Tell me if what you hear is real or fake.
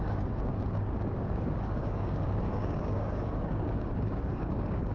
fake